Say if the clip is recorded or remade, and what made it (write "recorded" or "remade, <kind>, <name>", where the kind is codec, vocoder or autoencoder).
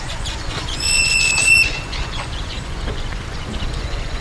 remade, vocoder, Vocos